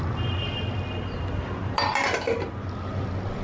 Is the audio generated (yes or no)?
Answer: no